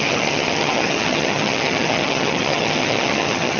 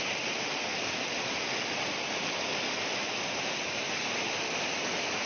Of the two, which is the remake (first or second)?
first